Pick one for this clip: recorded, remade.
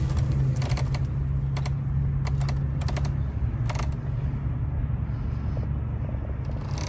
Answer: recorded